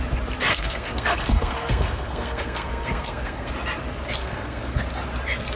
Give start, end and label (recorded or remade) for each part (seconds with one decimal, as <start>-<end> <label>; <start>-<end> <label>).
0.0-0.5 recorded; 0.5-3.5 remade; 3.5-4.2 recorded; 4.2-4.8 remade; 4.8-5.6 recorded